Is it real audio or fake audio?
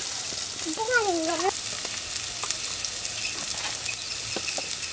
real